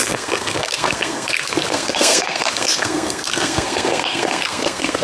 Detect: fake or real fake